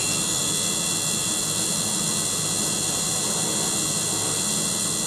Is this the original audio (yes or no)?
yes